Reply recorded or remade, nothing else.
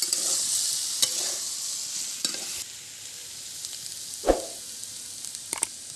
recorded